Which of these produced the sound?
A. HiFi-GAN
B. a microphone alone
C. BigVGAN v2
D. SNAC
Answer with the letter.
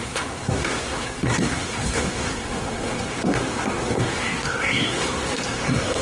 D